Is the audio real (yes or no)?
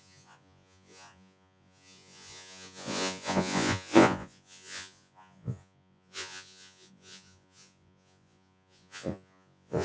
no